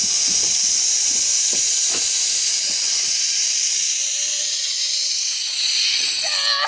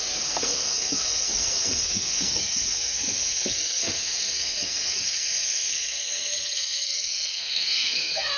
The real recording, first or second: first